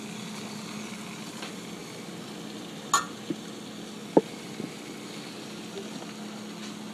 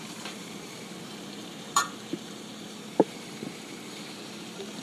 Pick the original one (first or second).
first